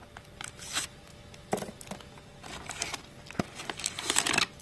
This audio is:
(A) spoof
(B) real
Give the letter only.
B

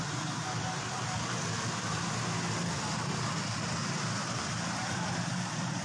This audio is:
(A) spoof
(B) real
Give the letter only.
B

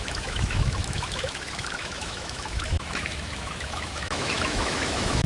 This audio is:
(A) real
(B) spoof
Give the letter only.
B